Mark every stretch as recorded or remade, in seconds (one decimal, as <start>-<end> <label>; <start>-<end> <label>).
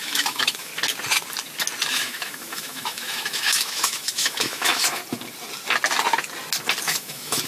0.0-0.7 remade; 0.7-1.9 recorded; 1.9-5.0 remade; 5.0-6.8 recorded; 6.8-7.5 remade